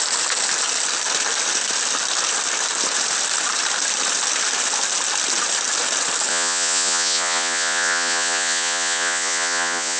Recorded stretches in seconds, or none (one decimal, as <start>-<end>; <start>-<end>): 0.0-6.3